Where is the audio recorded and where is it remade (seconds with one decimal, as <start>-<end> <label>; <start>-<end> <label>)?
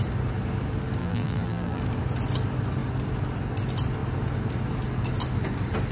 0.0-1.0 recorded; 1.0-1.8 remade; 1.8-5.9 recorded